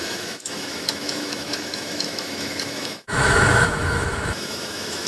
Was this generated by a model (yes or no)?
yes